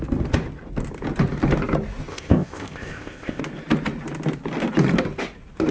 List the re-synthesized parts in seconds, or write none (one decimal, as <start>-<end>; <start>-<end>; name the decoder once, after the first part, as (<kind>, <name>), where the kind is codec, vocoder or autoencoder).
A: 2.1-3.4 (codec, ZipCodec)